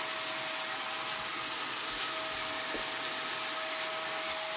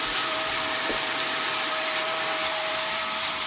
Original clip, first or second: first